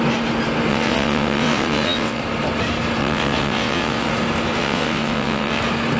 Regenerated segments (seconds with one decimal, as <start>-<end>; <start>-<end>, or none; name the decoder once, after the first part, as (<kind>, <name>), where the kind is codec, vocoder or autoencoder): 0.7-2.2 (vocoder, WaveNeXt); 3.0-4.1; 4.6-5.6